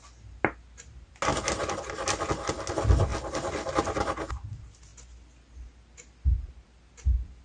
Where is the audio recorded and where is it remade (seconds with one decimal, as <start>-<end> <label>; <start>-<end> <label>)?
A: 0.0-7.4 recorded